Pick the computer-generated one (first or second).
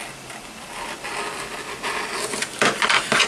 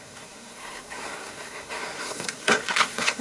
second